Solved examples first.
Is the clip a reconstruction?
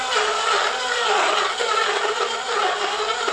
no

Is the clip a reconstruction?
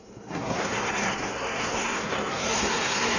yes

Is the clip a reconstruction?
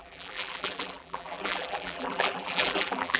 yes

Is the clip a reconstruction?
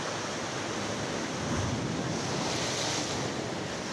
no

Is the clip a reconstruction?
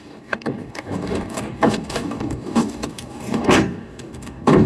yes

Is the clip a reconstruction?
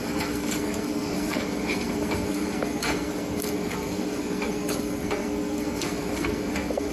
yes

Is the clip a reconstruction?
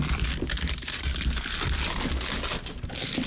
no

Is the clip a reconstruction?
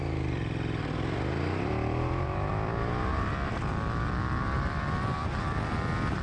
yes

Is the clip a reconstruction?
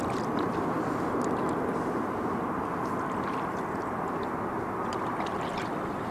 no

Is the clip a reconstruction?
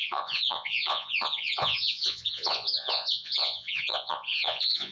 yes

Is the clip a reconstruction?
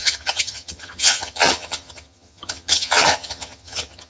yes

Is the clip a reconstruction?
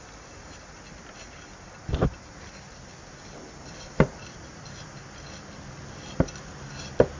no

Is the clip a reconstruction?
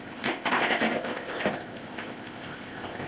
yes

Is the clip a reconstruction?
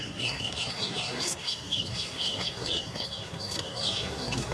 yes